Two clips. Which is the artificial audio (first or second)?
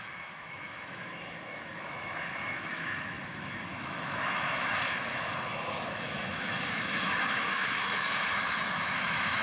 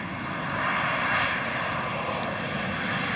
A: first